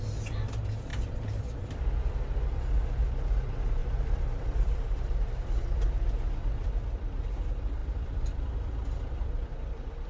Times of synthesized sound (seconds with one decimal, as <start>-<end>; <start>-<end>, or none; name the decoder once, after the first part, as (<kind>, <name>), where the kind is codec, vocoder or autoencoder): 3.8-6.7 (vocoder, BigVGAN v2); 7.8-10.1